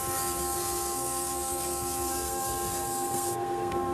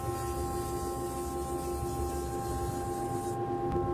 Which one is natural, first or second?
second